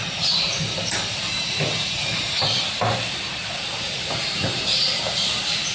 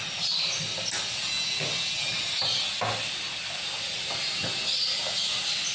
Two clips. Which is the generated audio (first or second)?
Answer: first